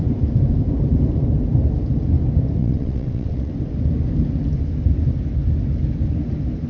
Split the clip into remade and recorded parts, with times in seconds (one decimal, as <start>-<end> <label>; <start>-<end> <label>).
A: 0.0-2.6 recorded; 2.6-3.5 remade; 3.5-6.7 recorded